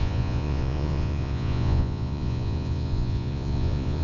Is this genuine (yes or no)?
no